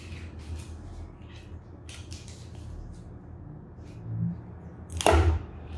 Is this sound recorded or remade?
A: recorded